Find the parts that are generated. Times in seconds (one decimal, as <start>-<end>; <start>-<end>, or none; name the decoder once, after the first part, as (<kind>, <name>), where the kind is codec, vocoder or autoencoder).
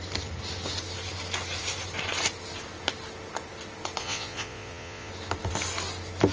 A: 4.0-5.1 (vocoder, Vocos)